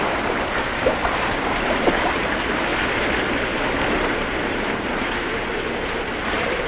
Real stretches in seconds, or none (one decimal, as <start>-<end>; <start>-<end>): 2.7-4.0